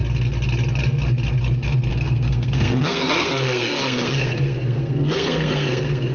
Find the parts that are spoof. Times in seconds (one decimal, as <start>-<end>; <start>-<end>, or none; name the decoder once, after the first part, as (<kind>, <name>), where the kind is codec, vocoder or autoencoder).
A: 1.9-6.1 (codec, SNAC)